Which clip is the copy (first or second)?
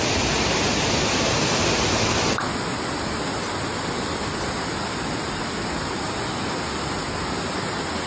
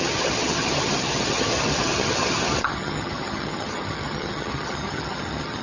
second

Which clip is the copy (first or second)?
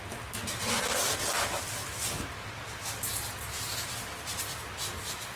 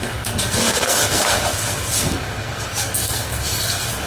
second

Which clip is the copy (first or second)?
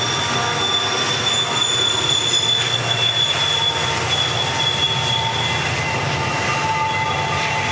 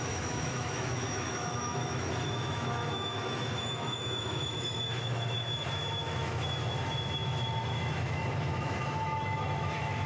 second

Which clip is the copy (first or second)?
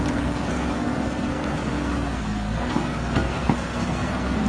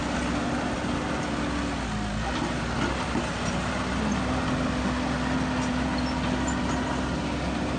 first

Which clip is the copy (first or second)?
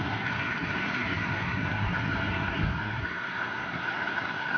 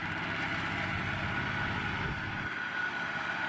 first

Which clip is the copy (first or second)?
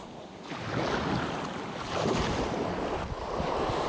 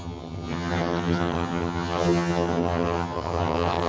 second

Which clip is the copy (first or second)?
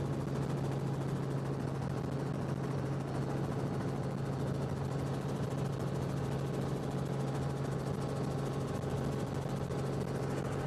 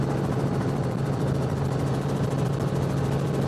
second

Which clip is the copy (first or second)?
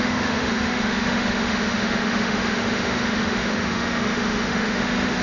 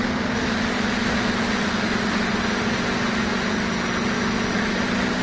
first